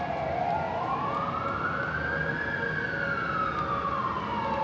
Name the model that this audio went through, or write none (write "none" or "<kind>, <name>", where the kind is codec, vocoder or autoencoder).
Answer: none